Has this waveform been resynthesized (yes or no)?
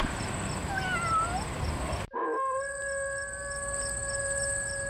no